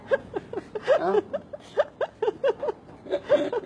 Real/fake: real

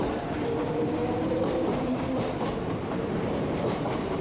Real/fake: fake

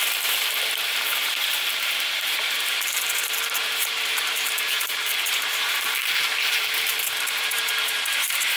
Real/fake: fake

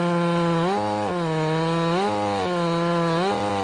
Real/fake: real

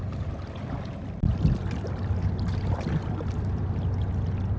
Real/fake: real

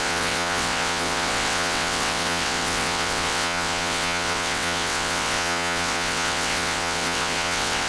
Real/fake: fake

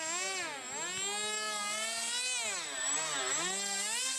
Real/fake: real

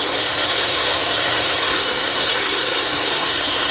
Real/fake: fake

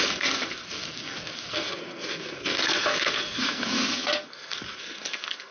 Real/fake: fake